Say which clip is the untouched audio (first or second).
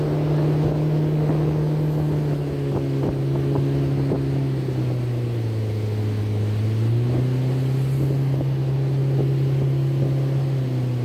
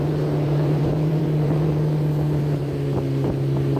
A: first